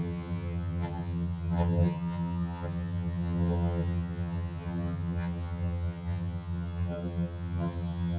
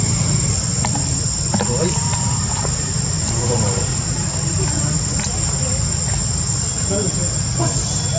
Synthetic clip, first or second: first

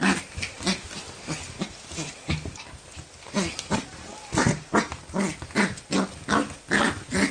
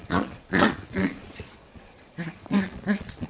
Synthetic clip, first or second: second